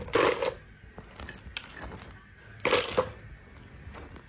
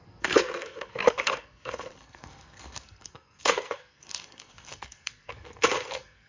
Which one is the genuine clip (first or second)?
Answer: first